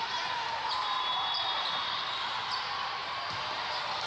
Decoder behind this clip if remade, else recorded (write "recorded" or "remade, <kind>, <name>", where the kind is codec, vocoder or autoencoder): recorded